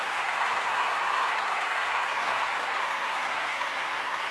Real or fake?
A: fake